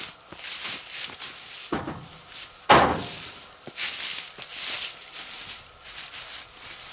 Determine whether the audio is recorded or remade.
recorded